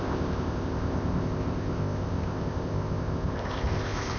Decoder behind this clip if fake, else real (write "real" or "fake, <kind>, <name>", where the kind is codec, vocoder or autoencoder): fake, codec, ZipCodec